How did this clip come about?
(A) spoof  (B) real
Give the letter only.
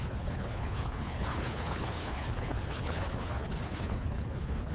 A